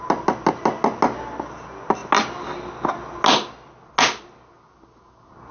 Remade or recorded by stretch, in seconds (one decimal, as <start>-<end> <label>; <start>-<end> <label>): 0.0-5.5 recorded